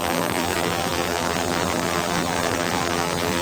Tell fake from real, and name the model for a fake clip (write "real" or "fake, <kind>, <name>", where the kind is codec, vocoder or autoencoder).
fake, vocoder, BigVGAN v2